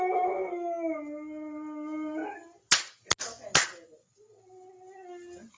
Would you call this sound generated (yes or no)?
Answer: no